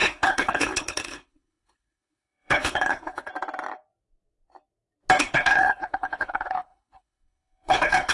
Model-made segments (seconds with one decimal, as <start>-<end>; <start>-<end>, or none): 0.0-3.3; 5.2-8.1